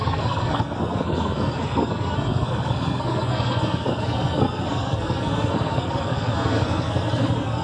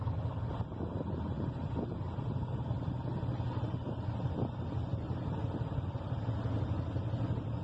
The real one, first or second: second